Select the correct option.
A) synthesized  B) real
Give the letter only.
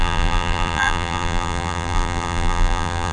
A